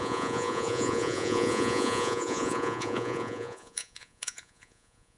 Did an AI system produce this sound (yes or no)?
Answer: yes